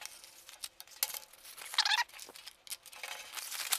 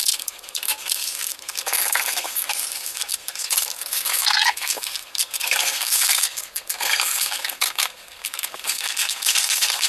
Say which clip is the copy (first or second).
second